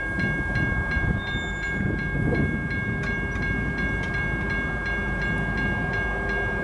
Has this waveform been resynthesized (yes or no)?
no